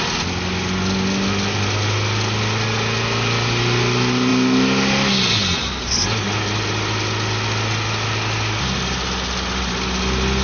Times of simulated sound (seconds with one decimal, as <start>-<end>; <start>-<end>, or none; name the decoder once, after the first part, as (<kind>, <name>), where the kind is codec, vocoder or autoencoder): none